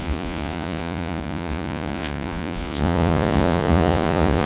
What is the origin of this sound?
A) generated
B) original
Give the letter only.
A